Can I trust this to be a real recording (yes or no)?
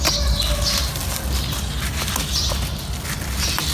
yes